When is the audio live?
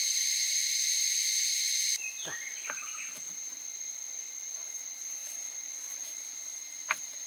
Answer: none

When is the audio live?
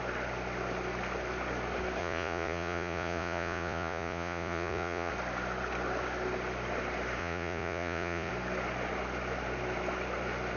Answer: 0.0-2.0; 5.1-7.2; 8.3-10.6